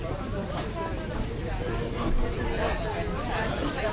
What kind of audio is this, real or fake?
real